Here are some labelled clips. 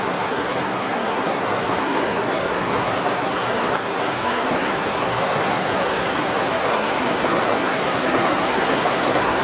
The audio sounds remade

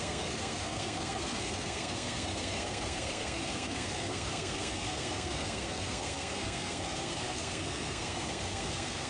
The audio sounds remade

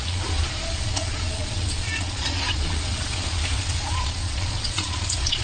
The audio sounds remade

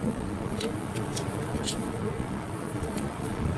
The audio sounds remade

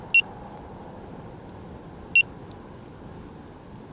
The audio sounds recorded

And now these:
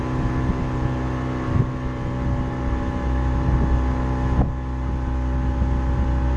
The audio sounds recorded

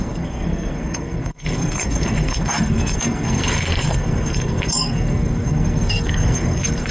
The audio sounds remade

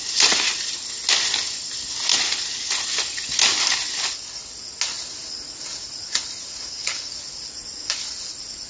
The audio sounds recorded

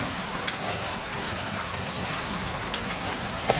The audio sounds remade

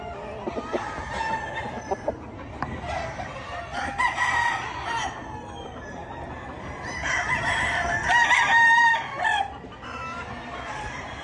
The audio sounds recorded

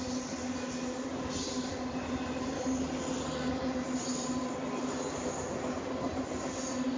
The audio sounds recorded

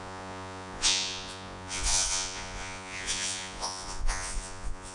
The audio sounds remade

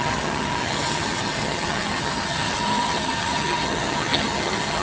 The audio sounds remade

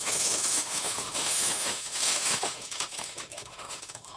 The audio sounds remade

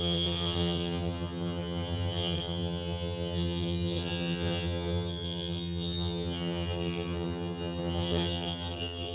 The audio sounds remade